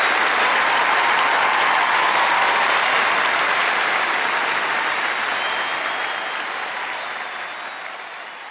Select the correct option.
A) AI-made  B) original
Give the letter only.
B